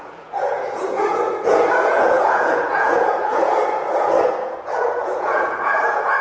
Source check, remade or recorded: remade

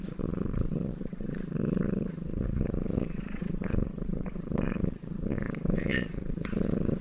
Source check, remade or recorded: remade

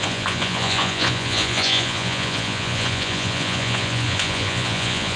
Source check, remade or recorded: remade